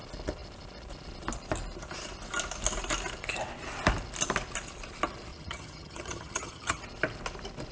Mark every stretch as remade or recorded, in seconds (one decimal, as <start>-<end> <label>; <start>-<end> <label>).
0.0-5.3 recorded; 5.3-6.8 remade; 6.8-7.7 recorded